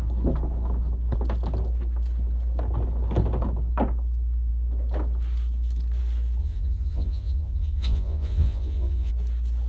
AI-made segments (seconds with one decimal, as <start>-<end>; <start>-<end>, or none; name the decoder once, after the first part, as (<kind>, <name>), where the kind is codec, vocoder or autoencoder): 6.4-9.1 (vocoder, Vocos)